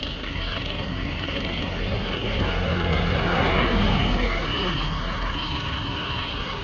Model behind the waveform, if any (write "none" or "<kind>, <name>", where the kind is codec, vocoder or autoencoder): codec, SNAC